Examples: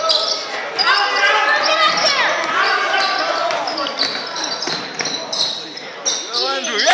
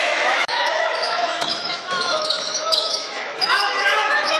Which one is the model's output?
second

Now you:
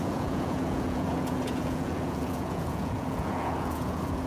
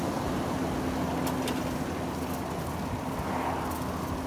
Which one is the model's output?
first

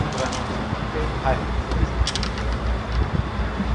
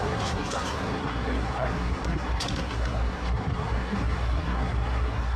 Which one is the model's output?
second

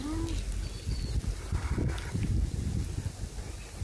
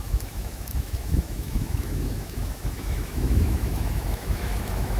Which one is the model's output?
second